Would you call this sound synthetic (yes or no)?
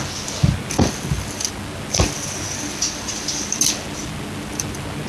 no